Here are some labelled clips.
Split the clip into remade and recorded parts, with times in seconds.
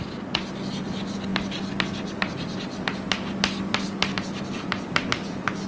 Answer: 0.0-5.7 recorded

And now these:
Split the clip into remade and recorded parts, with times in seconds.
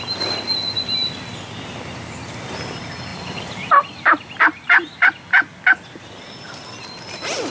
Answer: 0.0-7.5 recorded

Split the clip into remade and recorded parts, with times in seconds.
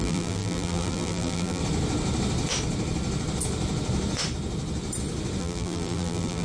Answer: 0.0-1.6 remade; 1.6-5.4 recorded; 5.4-6.4 remade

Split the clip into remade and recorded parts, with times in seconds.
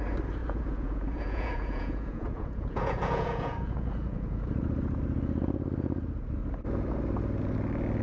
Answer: 0.0-0.4 recorded; 0.4-4.5 remade; 4.5-8.0 recorded